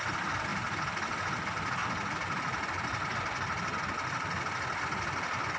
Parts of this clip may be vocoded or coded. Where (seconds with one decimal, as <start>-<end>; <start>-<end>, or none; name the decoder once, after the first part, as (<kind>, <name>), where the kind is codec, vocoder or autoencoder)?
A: none